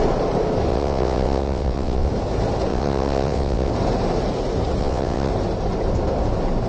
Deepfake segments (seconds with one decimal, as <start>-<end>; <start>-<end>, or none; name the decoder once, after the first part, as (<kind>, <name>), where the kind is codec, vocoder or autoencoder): 0.7-2.1 (vocoder, WaveNeXt); 2.7-3.7; 4.8-5.3